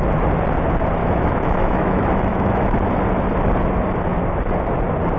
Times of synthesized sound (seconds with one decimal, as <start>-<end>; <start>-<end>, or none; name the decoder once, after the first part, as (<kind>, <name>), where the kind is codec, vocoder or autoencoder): 1.0-2.9 (autoencoder, DAC-VAE)